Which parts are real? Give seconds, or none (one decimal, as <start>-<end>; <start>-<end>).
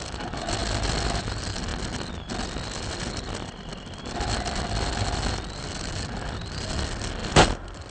0.0-7.2